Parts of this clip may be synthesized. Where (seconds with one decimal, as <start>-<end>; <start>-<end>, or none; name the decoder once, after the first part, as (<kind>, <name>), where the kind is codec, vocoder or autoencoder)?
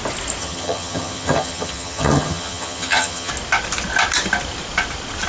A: 0.4-3.3 (vocoder, HiFi-GAN)